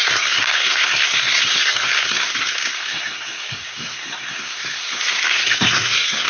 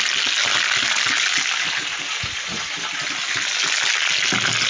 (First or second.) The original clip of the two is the second